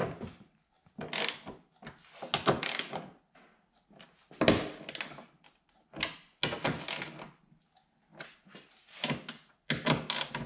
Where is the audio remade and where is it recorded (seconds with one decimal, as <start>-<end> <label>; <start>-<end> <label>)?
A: 0.0-10.5 recorded